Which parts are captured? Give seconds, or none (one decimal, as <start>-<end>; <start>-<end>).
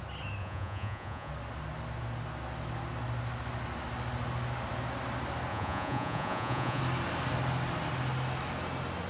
0.0-0.4; 1.3-5.5; 6.8-9.1